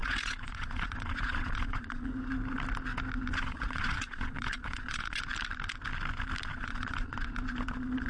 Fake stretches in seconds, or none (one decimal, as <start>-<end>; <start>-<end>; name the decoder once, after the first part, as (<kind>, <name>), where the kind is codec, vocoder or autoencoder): 0.0-2.1 (vocoder, Vocos); 3.3-5.2; 6.5-7.3